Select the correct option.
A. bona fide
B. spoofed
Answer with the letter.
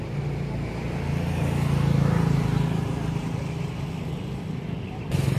A